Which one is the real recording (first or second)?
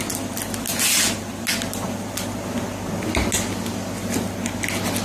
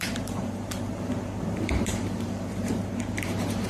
first